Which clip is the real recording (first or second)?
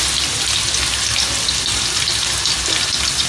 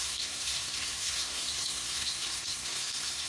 first